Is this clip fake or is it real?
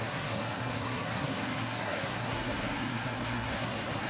fake